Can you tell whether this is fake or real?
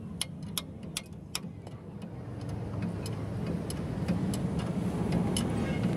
real